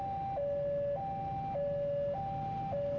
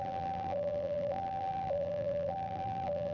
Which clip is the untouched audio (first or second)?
first